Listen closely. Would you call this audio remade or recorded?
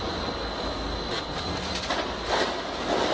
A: recorded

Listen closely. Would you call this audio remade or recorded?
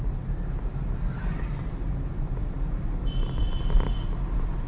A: recorded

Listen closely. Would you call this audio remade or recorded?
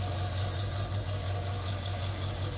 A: recorded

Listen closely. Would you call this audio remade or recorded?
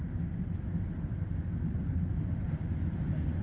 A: recorded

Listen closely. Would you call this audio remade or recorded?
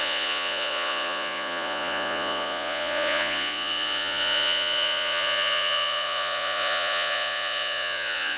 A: remade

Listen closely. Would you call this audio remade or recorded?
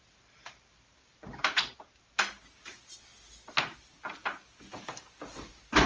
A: recorded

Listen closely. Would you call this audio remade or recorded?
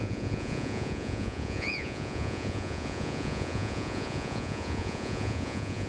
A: remade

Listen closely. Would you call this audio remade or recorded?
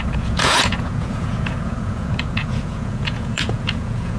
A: remade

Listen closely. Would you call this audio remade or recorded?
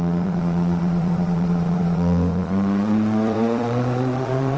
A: remade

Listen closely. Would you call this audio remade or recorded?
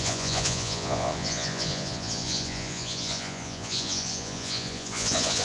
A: remade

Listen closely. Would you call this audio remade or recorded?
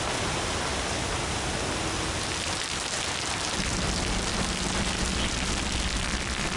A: recorded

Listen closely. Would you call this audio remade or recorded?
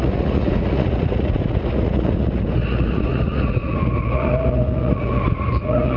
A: remade